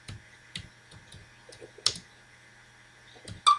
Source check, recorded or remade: recorded